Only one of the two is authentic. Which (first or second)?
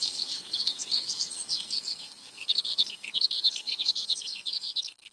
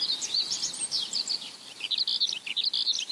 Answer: second